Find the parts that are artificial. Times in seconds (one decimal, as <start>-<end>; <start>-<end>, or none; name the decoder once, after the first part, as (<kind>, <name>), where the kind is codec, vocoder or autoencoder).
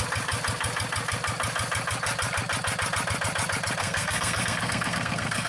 3.8-5.5 (codec, SNAC)